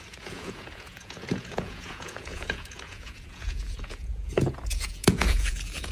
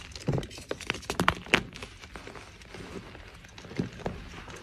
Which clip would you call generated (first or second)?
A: first